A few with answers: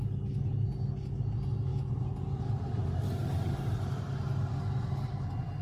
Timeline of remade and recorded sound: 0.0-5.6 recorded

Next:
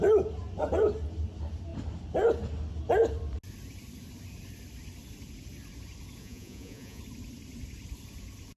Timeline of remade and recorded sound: 0.0-6.2 recorded; 6.2-7.0 remade; 7.0-8.6 recorded